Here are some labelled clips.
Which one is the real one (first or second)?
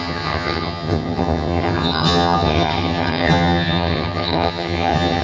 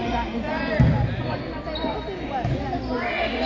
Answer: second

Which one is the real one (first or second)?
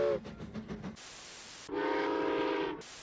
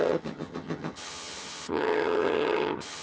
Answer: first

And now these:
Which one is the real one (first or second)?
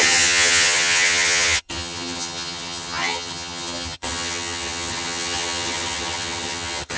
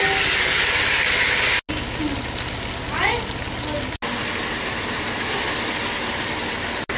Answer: second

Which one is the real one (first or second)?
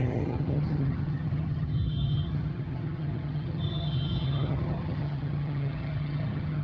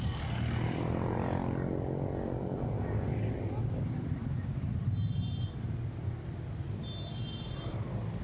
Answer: second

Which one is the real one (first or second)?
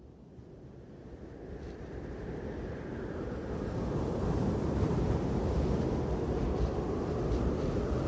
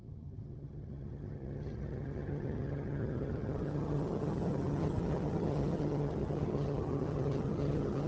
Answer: first